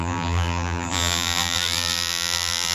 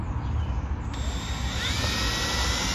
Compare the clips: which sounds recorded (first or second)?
second